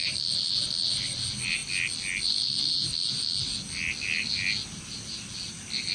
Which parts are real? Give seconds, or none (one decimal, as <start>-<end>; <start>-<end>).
0.0-5.9